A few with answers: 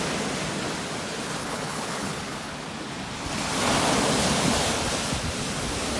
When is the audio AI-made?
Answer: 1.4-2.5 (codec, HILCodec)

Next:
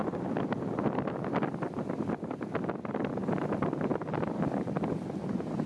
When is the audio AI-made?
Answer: 0.0-0.5 (vocoder, BigVGAN v2); 3.9-4.9

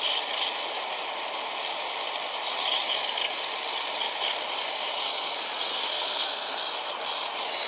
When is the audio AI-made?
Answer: 5.7-6.6 (codec, SNAC)

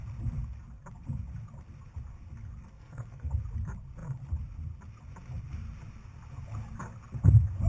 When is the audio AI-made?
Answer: 2.6-3.3 (codec, SNAC)